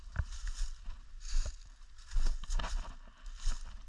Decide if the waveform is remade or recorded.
recorded